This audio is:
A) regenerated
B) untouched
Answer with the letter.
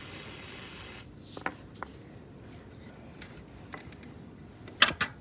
B